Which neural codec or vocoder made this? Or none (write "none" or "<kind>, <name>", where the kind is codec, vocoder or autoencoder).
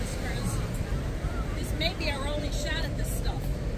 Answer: vocoder, BigVGAN v2